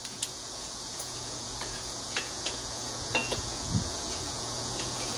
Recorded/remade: remade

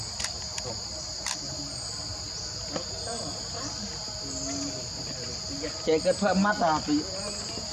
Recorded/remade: recorded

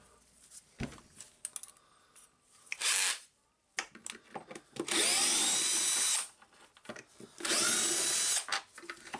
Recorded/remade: recorded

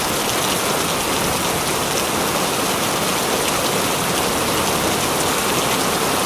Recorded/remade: recorded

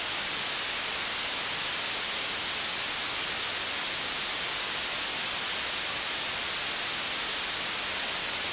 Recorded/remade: recorded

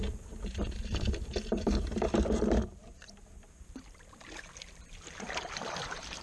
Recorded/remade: remade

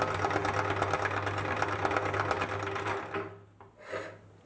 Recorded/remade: recorded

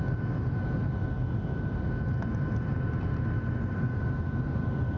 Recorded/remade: recorded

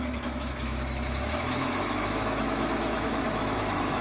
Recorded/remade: remade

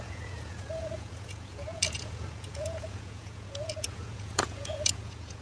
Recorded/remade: remade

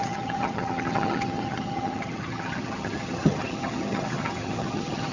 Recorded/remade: remade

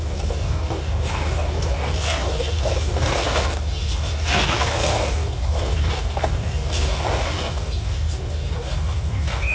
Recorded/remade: remade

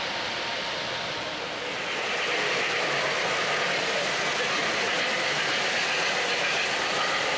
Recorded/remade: recorded